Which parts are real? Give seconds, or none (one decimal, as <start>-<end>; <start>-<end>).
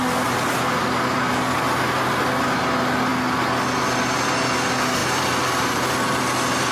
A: 0.0-5.0; 5.9-6.7